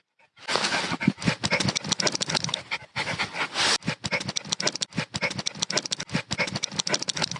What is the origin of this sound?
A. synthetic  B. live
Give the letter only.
B